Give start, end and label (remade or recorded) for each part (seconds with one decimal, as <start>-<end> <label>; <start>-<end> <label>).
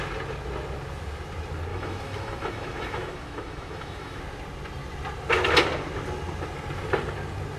0.0-1.7 recorded; 1.7-4.2 remade; 4.2-7.6 recorded